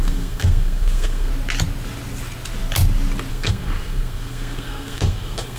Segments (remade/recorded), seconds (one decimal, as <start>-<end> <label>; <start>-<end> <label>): 0.0-1.3 remade; 1.3-3.3 recorded; 3.3-5.6 remade